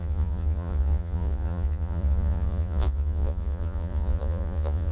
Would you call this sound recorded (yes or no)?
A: no